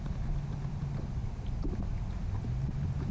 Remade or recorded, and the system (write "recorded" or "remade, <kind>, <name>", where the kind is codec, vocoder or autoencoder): recorded